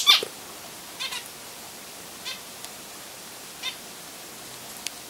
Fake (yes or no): no